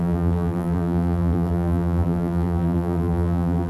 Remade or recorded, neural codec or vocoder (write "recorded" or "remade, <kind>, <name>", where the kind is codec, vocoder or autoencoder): remade, vocoder, BigVGAN v2